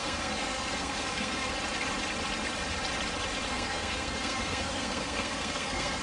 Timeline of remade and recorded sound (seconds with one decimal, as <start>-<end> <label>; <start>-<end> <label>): 0.0-1.5 remade; 1.5-3.5 recorded; 3.5-6.0 remade